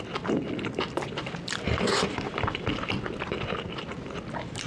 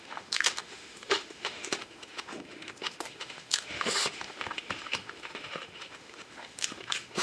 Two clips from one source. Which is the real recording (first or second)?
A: first